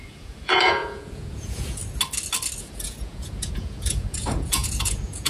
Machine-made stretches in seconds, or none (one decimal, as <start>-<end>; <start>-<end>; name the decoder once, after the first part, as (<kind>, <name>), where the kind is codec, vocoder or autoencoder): 0.0-1.8 (vocoder, Vocos); 2.6-5.3